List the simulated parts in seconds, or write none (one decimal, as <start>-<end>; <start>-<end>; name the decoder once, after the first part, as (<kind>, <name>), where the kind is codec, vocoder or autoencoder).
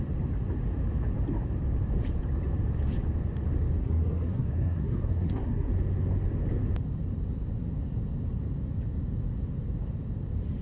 3.8-5.7 (codec, SNAC)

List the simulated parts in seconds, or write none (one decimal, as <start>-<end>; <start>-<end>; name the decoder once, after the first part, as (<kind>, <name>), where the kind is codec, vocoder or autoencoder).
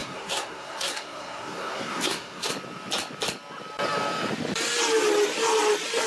0.0-2.5 (codec, SNAC)